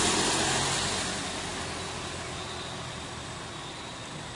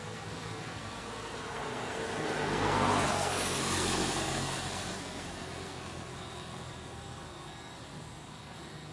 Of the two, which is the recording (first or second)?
first